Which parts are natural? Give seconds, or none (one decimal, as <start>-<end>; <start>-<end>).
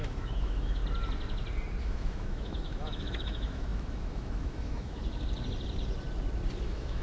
0.8-1.8; 5.0-6.6